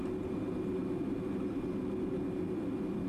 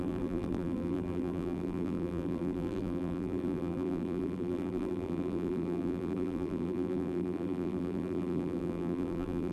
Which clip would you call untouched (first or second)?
first